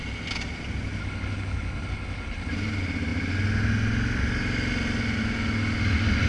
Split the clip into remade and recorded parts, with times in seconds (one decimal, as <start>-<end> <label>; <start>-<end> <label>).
0.0-1.0 recorded; 1.0-2.5 remade; 2.5-6.3 recorded

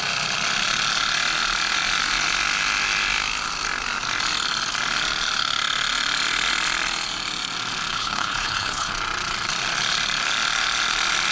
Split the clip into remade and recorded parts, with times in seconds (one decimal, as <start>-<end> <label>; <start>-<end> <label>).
0.0-7.9 recorded; 7.9-8.9 remade; 8.9-11.3 recorded

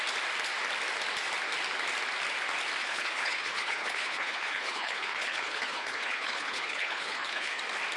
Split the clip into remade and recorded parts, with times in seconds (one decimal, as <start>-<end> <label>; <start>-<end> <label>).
0.0-2.8 recorded; 2.8-7.6 remade; 7.6-8.0 recorded

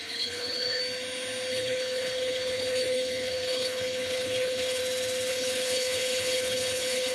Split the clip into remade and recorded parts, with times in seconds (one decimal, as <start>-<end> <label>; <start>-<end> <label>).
0.0-0.8 remade; 0.8-1.5 recorded; 1.5-4.8 remade; 4.8-5.3 recorded; 5.3-7.1 remade

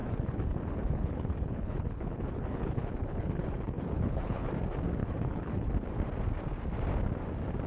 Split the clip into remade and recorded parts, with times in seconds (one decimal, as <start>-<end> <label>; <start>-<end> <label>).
0.0-4.5 remade; 4.5-5.0 recorded; 5.0-5.7 remade; 5.7-7.7 recorded

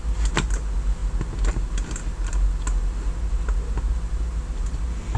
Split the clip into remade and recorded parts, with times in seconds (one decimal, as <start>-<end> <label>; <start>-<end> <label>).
0.0-5.2 recorded